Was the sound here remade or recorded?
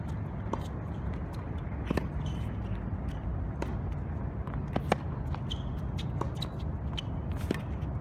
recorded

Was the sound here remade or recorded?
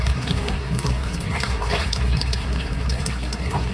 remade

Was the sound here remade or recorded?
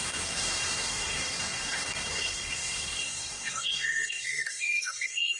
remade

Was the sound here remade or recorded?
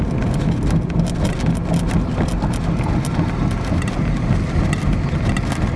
recorded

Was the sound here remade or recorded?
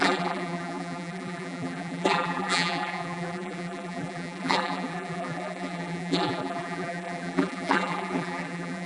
remade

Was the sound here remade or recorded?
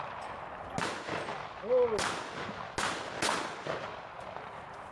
recorded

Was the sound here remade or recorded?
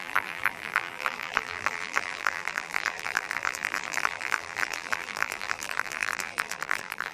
remade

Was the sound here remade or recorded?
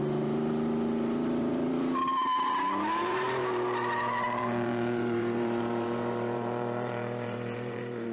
remade